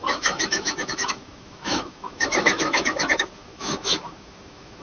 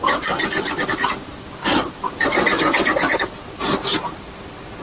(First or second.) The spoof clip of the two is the first